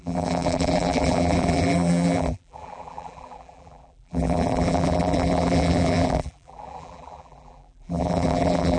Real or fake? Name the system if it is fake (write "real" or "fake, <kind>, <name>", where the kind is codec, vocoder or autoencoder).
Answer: fake, vocoder, BigVGAN v2